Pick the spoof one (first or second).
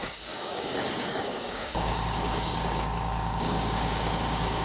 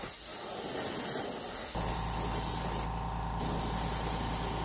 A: first